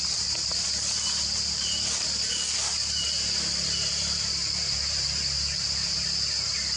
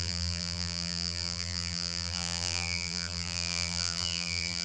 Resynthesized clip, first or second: second